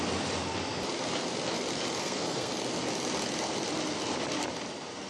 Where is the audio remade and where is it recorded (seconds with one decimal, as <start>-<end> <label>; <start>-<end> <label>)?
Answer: 0.0-2.0 recorded; 2.0-2.5 remade; 2.5-5.1 recorded